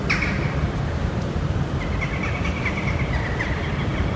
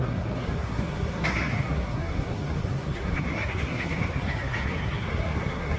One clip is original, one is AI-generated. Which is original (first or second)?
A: first